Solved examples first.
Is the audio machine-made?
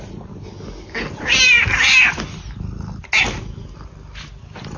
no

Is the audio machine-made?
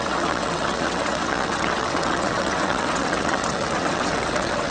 yes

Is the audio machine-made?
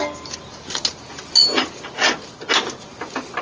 no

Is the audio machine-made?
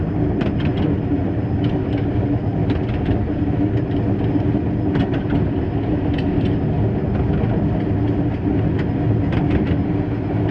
no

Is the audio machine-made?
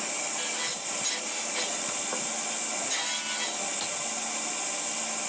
no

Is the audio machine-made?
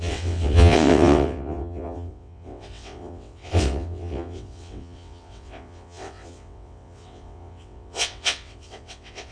yes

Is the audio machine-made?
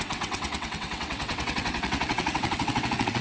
yes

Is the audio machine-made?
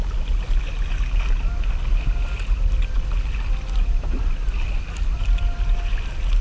no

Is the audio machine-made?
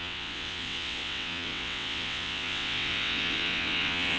yes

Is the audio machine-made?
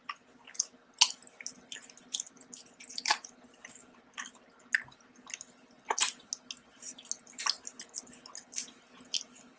no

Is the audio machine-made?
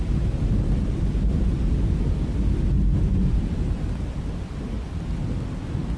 no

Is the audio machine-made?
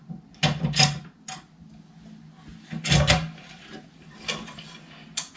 no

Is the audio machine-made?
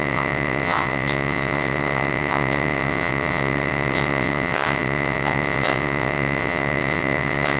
yes